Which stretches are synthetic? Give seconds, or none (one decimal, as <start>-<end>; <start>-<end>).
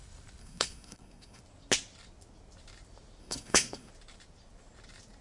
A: 0.4-1.4; 3.2-3.9